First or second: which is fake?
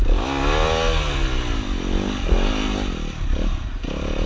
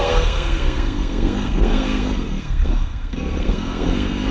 second